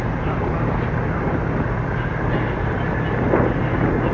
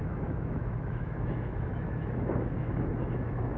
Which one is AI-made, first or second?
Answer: second